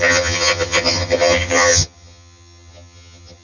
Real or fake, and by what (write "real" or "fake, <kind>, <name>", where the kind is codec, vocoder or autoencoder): fake, vocoder, HiFi-GAN